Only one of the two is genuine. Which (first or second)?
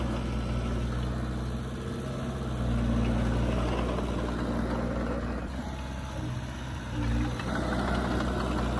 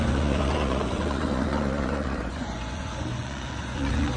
first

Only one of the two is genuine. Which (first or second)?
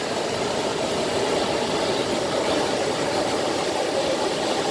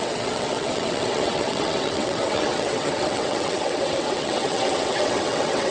first